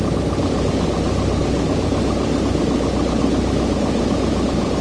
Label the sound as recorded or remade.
recorded